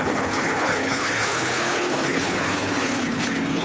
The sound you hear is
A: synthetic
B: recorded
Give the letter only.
A